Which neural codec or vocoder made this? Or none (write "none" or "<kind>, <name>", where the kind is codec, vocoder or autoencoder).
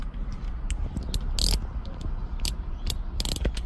none